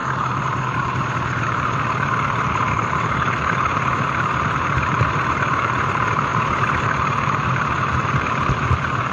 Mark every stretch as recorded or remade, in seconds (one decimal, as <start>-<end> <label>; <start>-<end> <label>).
0.0-9.1 remade